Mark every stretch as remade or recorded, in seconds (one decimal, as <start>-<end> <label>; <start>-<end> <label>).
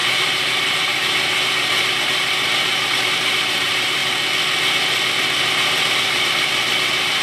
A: 0.0-4.0 remade; 4.0-6.0 recorded; 6.0-7.2 remade